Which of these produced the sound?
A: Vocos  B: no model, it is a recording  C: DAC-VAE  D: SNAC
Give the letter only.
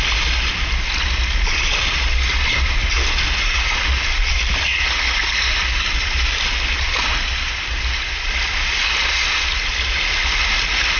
B